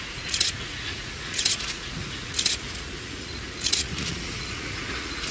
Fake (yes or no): yes